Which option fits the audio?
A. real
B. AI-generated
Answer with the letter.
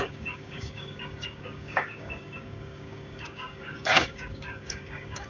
B